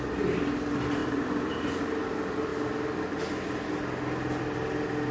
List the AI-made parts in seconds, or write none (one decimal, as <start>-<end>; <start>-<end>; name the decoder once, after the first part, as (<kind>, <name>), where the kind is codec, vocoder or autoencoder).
1.0-1.8 (vocoder, BigVGAN v2)